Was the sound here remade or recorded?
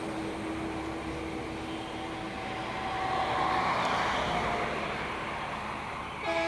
recorded